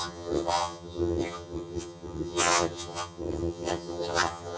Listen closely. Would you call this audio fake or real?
fake